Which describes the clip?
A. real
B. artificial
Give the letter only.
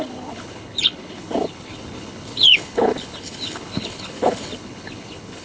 B